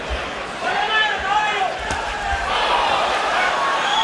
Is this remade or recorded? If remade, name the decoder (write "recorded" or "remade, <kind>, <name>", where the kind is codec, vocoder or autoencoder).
remade, vocoder, BigVGAN v2